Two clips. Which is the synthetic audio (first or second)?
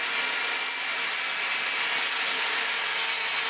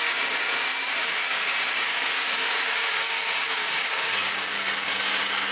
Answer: second